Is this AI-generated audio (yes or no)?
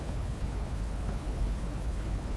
yes